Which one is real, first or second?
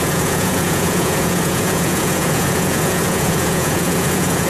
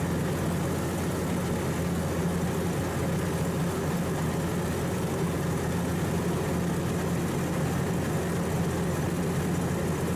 second